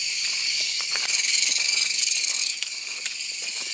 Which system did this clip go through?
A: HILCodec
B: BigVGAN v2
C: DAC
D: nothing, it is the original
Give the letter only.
C